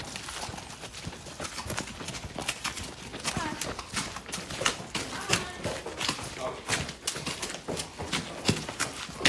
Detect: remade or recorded recorded